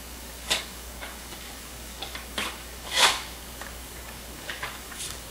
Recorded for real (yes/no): no